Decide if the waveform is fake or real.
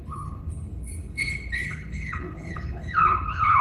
fake